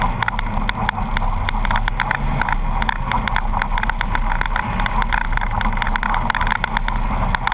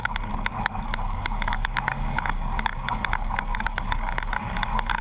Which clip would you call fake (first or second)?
second